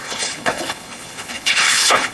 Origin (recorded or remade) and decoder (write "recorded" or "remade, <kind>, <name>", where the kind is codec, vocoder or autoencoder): remade, codec, HILCodec